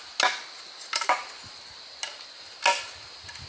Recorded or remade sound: recorded